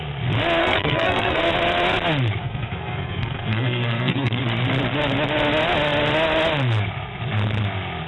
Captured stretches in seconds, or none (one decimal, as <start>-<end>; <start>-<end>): 0.0-0.6; 1.4-2.4; 4.4-8.1